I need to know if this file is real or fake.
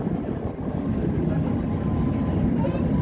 real